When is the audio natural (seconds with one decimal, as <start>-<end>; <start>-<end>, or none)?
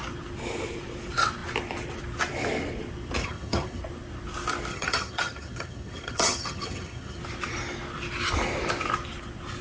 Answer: 0.0-3.2; 3.8-4.7; 7.2-9.6